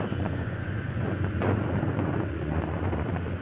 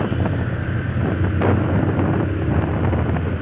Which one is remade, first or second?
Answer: first